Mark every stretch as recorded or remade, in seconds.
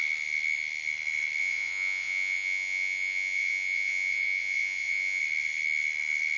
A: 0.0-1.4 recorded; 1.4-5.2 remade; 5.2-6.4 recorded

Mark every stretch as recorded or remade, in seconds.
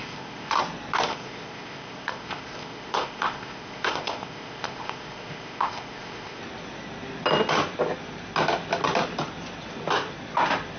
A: 0.0-0.6 remade; 0.6-1.1 recorded; 1.1-6.4 remade; 6.4-10.8 recorded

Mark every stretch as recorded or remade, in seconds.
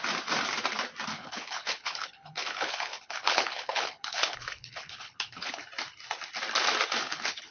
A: 0.0-1.1 recorded; 1.1-5.6 remade; 5.6-7.0 recorded; 7.0-7.5 remade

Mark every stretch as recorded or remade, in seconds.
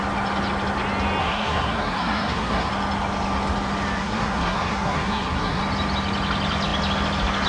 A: 0.0-1.2 recorded; 1.2-2.7 remade; 2.7-4.0 recorded; 4.0-5.6 remade; 5.6-7.5 recorded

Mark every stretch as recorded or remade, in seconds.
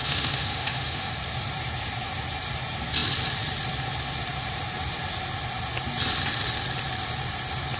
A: 0.0-1.1 remade; 1.1-7.8 recorded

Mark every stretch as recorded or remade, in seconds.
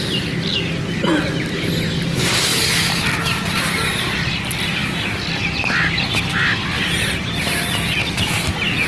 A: 0.0-8.9 recorded